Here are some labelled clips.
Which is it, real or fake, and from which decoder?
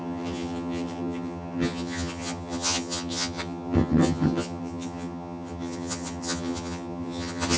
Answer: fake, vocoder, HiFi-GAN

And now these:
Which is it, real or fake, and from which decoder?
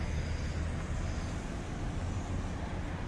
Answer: real